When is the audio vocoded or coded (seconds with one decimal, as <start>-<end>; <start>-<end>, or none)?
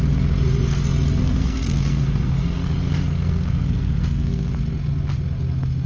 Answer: 1.2-4.5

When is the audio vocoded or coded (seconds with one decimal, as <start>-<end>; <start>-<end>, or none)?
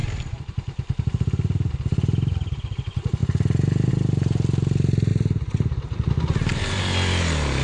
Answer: 0.0-1.7; 5.1-6.1